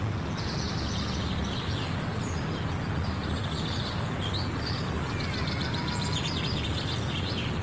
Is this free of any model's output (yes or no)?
yes